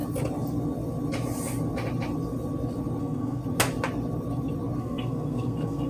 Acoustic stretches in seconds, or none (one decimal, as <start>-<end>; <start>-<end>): 0.0-3.0; 3.4-4.8